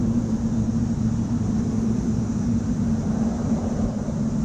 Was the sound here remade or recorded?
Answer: recorded